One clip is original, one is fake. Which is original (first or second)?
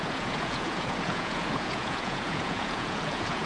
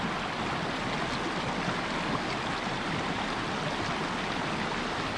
second